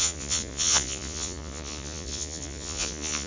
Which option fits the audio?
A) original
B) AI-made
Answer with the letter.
B